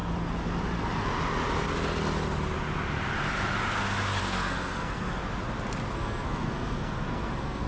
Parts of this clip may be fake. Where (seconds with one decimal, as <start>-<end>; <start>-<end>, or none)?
4.2-5.2; 5.9-7.7

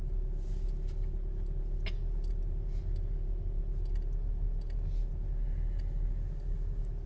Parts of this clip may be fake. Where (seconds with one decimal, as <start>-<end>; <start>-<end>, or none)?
none